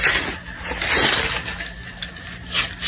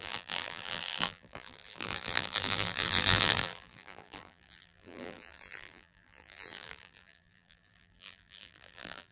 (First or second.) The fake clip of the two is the second